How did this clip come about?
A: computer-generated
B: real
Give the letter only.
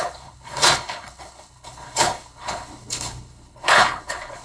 A